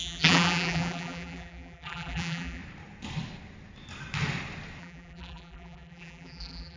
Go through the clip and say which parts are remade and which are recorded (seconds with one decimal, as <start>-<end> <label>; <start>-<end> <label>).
0.0-2.6 remade; 2.6-4.8 recorded; 4.8-6.8 remade